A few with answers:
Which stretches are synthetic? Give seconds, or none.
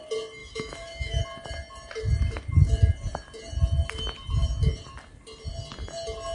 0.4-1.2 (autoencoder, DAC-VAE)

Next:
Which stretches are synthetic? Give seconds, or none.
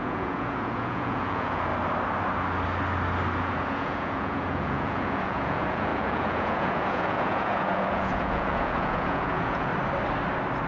0.0-1.7 (vocoder, Vocos); 3.4-9.7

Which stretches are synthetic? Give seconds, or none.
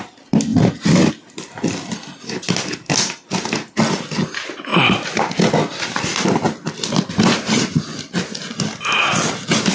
none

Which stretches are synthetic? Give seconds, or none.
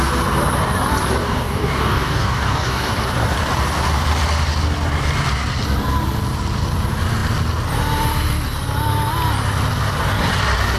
1.2-2.9 (codec, DAC)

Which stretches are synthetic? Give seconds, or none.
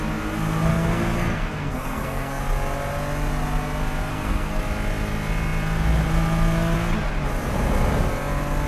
0.7-2.4 (codec, SNAC); 4.1-4.6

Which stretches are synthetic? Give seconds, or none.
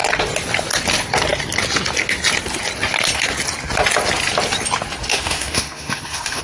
5.1-6.4 (autoencoder, DAC-VAE)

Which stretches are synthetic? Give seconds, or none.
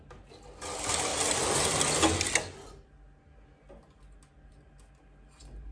none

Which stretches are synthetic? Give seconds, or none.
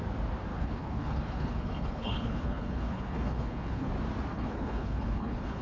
0.5-3.9 (codec, HILCodec); 4.3-5.6